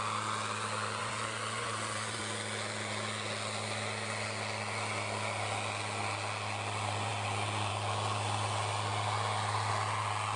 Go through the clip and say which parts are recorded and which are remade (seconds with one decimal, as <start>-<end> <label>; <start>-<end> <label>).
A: 0.0-1.0 recorded; 1.0-2.2 remade; 2.2-10.4 recorded